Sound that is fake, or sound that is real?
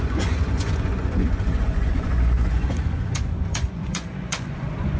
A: fake